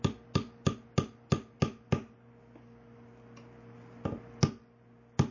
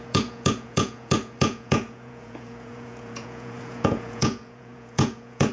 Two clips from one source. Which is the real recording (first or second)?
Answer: first